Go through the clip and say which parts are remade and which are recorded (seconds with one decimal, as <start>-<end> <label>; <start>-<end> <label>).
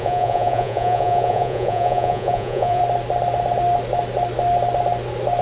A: 0.0-2.8 remade; 2.8-5.4 recorded